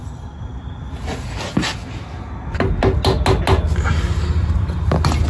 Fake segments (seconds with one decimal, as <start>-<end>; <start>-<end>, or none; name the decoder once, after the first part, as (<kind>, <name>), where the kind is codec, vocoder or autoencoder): none